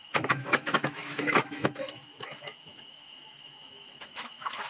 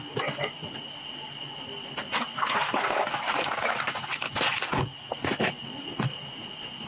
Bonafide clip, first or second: second